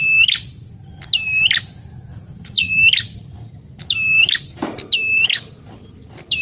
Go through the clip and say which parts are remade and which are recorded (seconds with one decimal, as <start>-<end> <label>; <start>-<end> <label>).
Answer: 0.0-2.1 recorded; 2.1-2.7 remade; 2.7-6.4 recorded